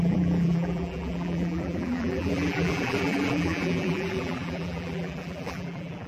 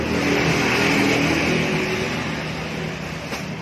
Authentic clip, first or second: second